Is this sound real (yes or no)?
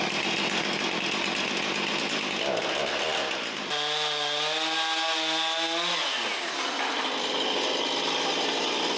yes